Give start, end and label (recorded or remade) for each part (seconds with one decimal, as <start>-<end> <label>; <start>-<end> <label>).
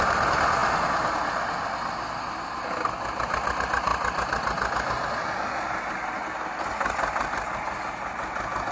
0.0-8.7 recorded